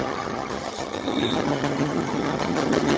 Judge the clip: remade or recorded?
remade